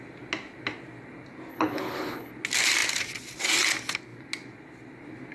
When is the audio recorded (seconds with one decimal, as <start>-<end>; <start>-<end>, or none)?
0.0-1.5; 2.3-5.3